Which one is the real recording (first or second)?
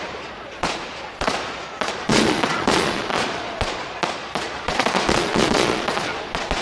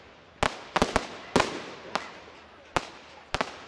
second